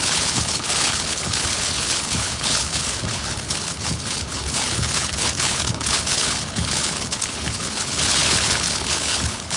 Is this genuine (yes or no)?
no